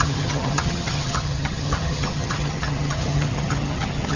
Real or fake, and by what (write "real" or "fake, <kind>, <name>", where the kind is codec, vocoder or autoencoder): fake, vocoder, HiFi-GAN